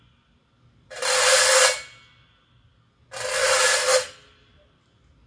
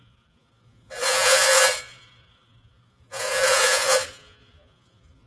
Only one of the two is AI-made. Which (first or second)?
second